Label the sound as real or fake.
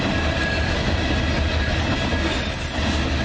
real